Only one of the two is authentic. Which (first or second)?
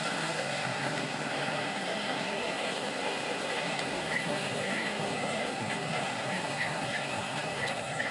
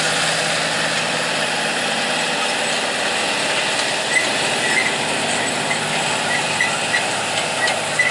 second